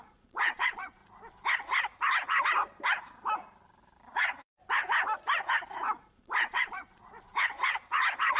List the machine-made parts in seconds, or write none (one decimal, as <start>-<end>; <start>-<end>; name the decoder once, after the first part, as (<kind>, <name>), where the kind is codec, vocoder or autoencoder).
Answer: 0.0-1.0 (vocoder, Vocos); 4.1-4.5; 6.1-8.4